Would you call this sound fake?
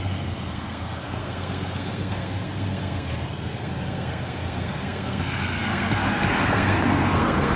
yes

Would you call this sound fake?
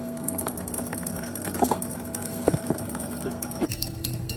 yes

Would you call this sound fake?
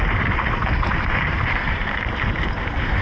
yes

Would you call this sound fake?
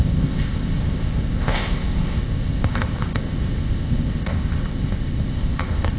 yes